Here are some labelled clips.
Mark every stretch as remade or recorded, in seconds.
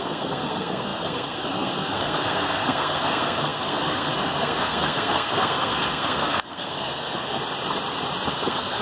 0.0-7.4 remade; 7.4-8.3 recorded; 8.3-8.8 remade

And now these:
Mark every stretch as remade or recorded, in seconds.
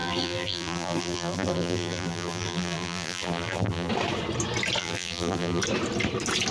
0.0-3.9 remade; 3.9-4.8 recorded; 4.8-5.6 remade; 5.6-6.5 recorded